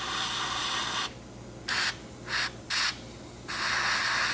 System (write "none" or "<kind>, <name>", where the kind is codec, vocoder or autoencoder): none